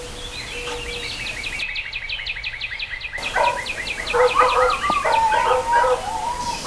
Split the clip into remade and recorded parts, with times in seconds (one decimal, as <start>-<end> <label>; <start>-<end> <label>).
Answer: 0.0-6.7 recorded